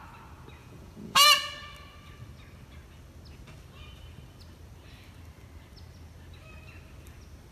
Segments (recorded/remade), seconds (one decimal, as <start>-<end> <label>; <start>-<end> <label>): 0.0-0.6 recorded; 0.6-1.5 remade; 1.5-7.5 recorded